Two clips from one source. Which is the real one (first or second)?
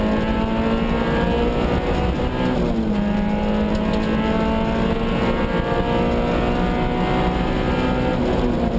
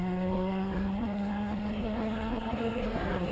first